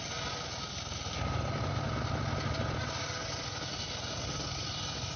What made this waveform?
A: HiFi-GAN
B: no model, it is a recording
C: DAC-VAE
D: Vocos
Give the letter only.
B